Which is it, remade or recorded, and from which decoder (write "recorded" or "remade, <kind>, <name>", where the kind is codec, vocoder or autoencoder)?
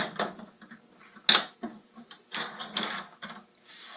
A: recorded